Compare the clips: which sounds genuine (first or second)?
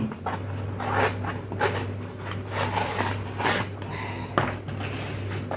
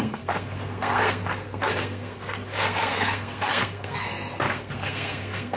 first